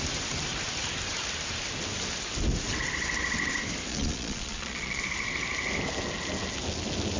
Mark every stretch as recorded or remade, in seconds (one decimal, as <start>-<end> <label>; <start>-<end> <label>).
0.0-3.9 recorded; 3.9-5.0 remade; 5.0-7.2 recorded